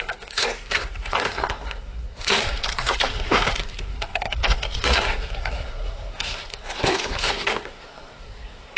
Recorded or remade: remade